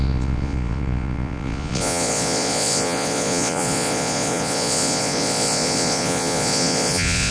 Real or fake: fake